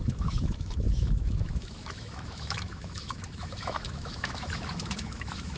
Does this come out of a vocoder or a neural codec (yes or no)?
yes